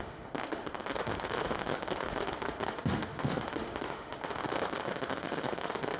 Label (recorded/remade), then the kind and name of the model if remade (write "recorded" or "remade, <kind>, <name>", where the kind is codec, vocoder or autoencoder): remade, autoencoder, DAC-VAE